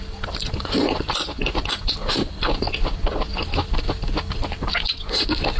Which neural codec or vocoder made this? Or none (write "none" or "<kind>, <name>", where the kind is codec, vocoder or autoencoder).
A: none